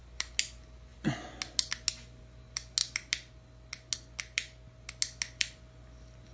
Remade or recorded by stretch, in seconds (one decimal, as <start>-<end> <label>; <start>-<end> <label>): 0.0-6.3 recorded